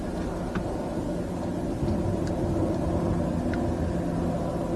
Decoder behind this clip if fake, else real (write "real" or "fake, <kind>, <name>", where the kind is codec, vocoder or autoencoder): real